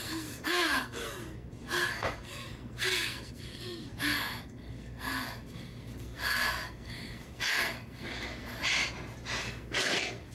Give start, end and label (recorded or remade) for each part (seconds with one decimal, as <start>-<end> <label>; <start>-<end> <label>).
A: 0.0-8.6 remade; 8.6-9.4 recorded; 9.4-10.3 remade